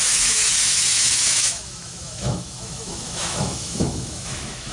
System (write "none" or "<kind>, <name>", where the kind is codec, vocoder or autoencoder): autoencoder, DAC-VAE